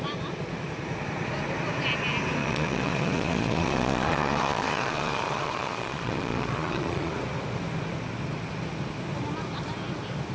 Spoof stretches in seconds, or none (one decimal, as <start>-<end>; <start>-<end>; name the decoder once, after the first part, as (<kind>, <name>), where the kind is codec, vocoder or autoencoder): 2.4-7.1 (vocoder, Vocos)